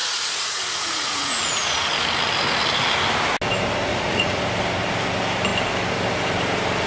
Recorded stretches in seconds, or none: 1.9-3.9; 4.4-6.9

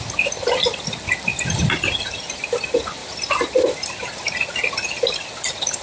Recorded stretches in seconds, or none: 0.0-5.8